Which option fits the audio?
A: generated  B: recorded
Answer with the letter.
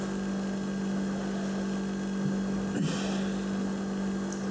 B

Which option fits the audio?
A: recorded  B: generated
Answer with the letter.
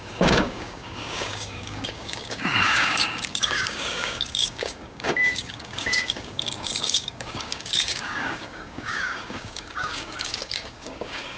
B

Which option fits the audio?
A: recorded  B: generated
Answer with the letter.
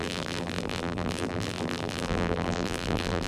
B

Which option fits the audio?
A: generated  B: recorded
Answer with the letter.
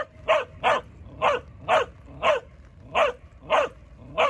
B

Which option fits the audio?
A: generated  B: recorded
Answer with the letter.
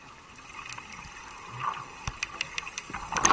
B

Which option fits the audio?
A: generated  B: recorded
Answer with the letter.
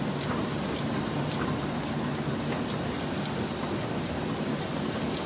B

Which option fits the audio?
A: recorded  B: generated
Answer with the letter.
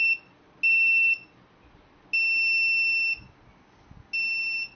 A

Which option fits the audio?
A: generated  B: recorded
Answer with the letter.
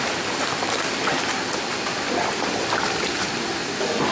B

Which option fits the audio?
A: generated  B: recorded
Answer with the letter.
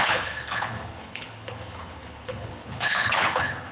A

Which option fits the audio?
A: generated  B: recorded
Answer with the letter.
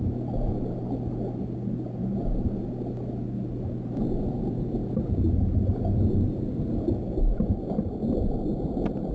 B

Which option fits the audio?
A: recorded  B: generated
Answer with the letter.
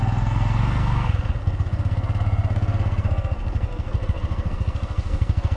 B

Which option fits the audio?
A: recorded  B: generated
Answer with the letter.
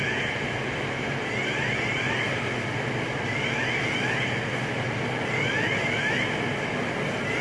A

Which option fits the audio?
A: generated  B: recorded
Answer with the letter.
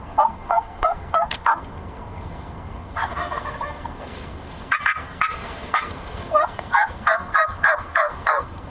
A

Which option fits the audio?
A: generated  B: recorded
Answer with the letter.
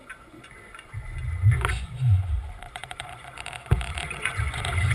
A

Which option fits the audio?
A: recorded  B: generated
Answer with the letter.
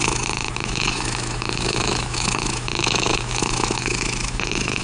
B